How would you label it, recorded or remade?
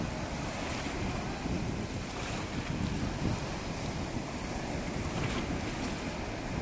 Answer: recorded